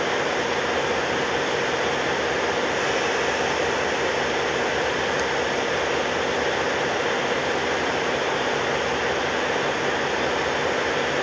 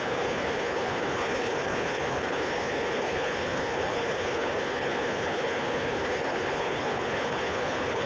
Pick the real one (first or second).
first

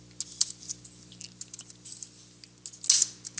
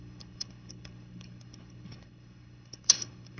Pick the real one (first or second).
first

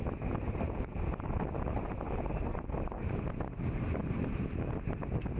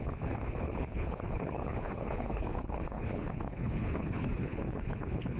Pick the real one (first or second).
first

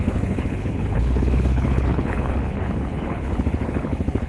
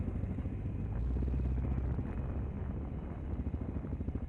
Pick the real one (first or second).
second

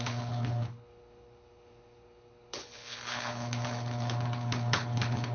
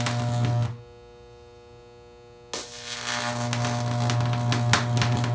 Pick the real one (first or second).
second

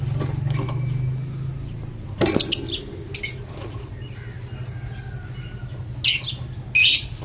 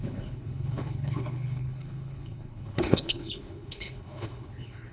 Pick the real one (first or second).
first